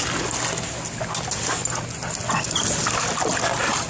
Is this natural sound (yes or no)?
yes